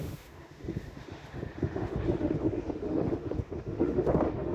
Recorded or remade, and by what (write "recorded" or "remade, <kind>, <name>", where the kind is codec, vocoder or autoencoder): remade, autoencoder, DAC-VAE